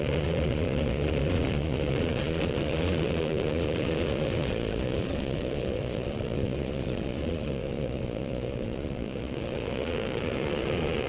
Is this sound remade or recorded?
remade